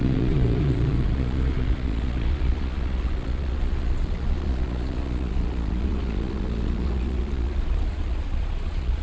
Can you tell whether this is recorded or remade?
remade